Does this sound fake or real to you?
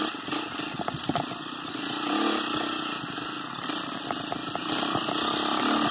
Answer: real